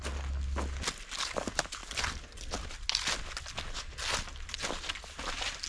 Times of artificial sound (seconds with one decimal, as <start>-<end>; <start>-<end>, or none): none